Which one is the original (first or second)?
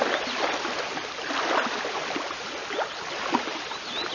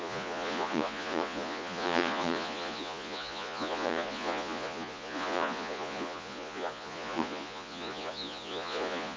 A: first